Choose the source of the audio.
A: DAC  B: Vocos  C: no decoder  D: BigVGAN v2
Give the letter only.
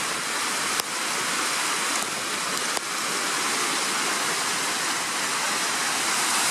C